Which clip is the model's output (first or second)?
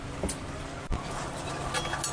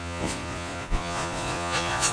second